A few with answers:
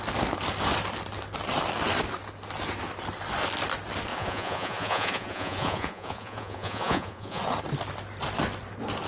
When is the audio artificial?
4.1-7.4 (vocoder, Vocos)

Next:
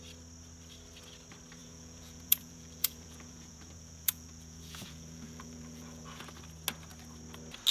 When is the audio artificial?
1.6-6.2 (vocoder, Vocos)

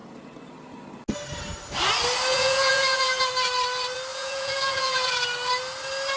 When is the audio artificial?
2.3-3.3 (vocoder, Vocos); 4.1-5.1

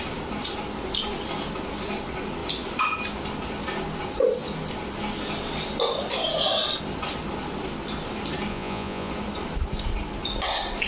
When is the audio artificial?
8.5-9.1 (vocoder, Vocos)

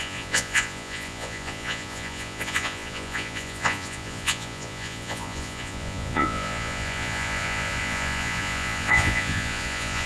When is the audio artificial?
0.0-10.1 (vocoder, Vocos)

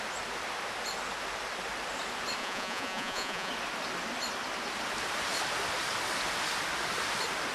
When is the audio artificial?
2.4-3.5 (vocoder, Vocos)

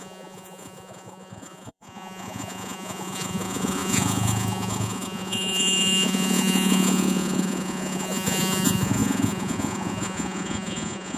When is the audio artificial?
0.0-11.2 (vocoder, Vocos)

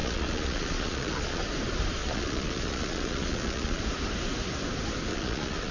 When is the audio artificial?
0.0-1.4 (vocoder, Vocos); 2.0-3.8; 5.1-5.7